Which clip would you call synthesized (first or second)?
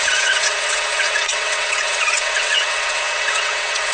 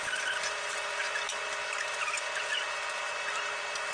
first